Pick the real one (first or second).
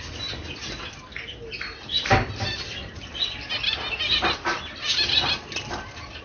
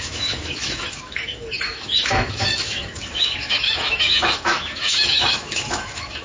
first